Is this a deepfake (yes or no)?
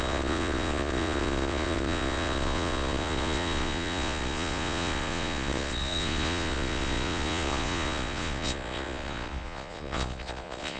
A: yes